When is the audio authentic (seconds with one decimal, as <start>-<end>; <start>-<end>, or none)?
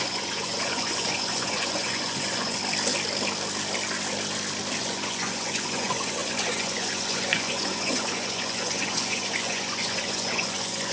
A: 2.6-4.8